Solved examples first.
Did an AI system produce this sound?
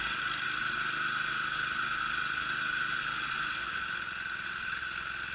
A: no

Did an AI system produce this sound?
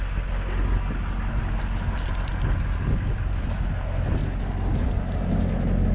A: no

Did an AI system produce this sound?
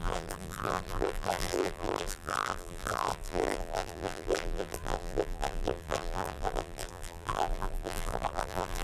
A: yes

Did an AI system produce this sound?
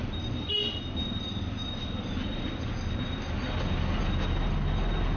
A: no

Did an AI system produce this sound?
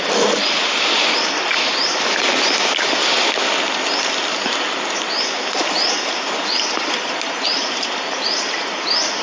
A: no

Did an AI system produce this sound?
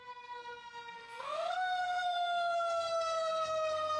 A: yes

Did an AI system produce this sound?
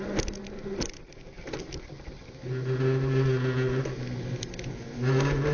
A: no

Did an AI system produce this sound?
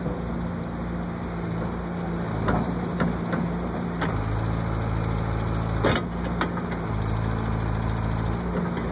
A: no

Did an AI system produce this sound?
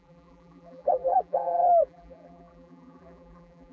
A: yes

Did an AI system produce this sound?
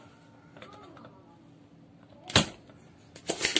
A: no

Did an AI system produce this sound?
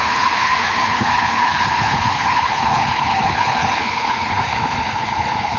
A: yes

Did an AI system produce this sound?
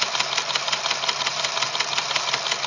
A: no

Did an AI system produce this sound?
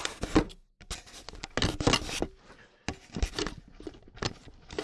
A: no